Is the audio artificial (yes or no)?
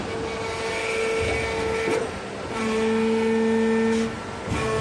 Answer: no